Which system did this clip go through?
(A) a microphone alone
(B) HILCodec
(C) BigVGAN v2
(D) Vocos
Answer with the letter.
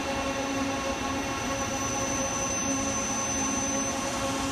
C